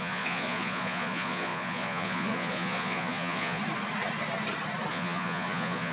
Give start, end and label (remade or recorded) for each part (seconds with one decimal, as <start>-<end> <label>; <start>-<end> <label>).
0.0-3.6 remade; 3.6-4.9 recorded; 4.9-5.9 remade